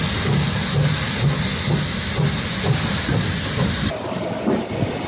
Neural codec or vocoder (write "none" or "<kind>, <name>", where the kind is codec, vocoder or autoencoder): none